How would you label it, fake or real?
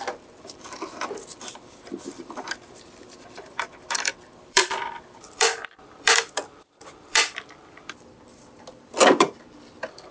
fake